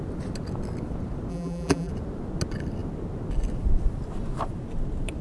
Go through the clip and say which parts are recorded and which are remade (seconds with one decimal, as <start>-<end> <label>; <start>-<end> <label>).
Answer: 0.0-1.3 recorded; 1.3-1.9 remade; 1.9-5.2 recorded